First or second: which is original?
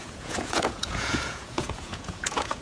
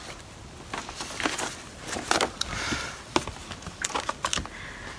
second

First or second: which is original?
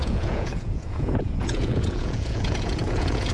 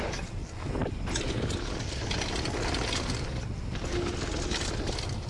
second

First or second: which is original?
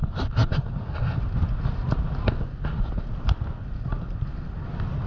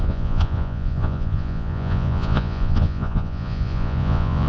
first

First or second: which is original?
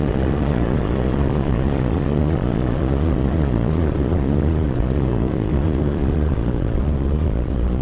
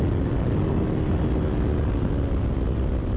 second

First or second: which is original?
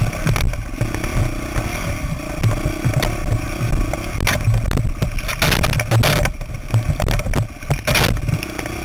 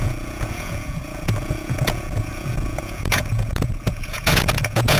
first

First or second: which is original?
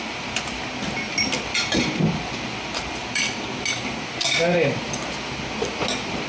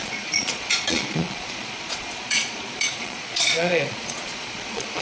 first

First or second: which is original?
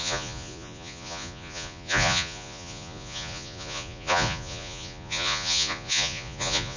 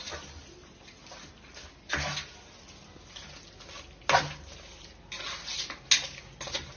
second